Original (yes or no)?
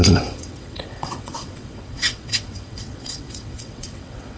no